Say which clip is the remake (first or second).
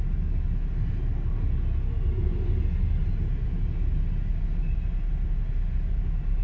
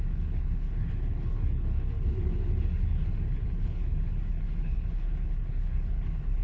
second